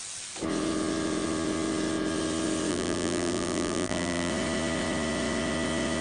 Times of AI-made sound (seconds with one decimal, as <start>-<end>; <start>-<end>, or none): 2.7-4.3